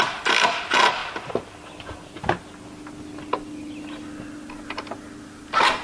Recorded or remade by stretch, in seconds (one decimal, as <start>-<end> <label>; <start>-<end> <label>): 0.0-5.8 recorded